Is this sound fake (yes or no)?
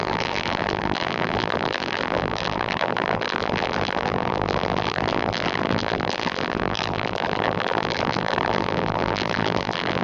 yes